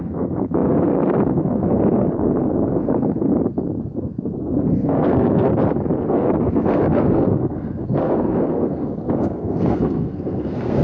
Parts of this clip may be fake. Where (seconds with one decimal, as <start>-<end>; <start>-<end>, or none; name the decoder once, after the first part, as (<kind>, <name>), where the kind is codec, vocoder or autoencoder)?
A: 0.0-3.3 (codec, SNAC); 3.9-5.5; 6.1-10.8

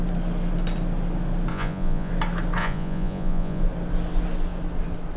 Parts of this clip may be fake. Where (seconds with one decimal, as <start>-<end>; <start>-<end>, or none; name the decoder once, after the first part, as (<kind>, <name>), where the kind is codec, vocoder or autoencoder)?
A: 1.5-2.1 (vocoder, Vocos); 2.6-3.6

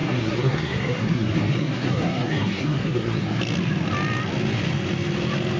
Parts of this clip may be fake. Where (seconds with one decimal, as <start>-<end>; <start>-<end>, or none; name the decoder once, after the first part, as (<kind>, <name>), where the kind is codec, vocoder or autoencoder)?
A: 0.0-3.4 (codec, SNAC)

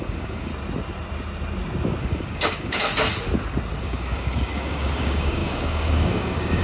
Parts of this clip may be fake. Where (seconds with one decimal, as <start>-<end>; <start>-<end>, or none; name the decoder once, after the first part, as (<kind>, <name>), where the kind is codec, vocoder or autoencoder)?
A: 0.0-0.5 (codec, DAC); 2.0-2.9; 3.8-6.6

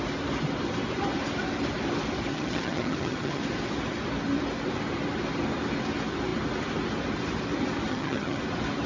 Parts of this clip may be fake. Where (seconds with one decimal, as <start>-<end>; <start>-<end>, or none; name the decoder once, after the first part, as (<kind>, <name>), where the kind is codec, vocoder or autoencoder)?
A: 2.3-3.4 (vocoder, HiFi-GAN); 7.9-8.4

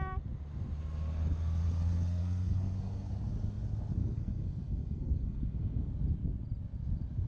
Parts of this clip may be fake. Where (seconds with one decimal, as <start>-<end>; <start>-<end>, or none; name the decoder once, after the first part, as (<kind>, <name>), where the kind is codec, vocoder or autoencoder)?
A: 2.2-3.1 (codec, SNAC); 4.0-5.9